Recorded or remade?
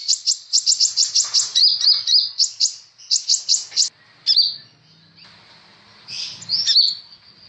recorded